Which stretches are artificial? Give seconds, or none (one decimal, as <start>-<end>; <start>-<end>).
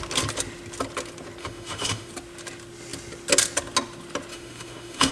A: 1.4-2.1; 4.3-5.1